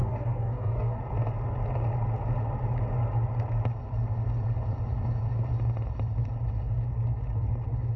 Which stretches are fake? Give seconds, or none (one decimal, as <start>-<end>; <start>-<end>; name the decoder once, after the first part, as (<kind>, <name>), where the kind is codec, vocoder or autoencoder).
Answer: 0.0-1.0 (codec, DAC)